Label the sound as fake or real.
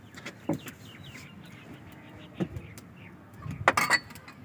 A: real